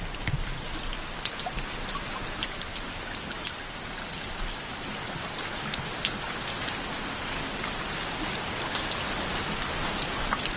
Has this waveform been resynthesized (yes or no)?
no